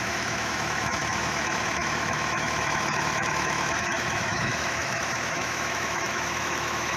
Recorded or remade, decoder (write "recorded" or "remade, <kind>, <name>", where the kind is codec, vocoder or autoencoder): remade, autoencoder, DAC-VAE